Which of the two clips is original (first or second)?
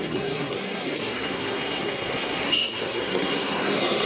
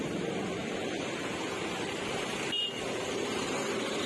second